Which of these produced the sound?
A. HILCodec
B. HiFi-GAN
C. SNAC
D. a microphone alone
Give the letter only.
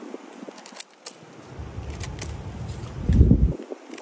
D